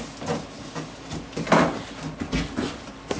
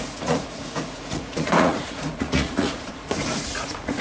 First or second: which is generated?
second